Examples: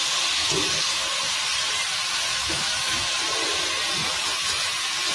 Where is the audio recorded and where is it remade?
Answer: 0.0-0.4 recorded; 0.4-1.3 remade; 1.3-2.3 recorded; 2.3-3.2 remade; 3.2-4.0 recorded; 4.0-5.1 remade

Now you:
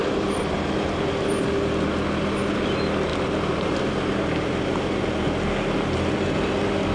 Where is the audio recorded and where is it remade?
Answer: 0.0-3.1 recorded; 3.1-3.8 remade; 3.8-6.9 recorded

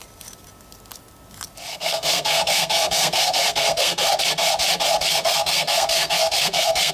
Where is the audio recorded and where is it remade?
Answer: 0.0-1.7 recorded; 1.7-4.2 remade; 4.2-5.1 recorded; 5.1-6.9 remade